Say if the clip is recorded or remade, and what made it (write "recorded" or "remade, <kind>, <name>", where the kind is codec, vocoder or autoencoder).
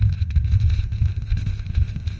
remade, codec, ZipCodec